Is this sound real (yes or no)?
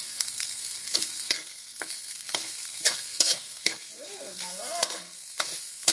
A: no